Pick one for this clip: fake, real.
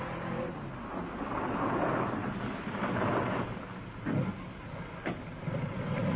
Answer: real